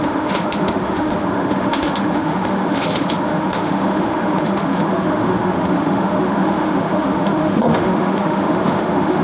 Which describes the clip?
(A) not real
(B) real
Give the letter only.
A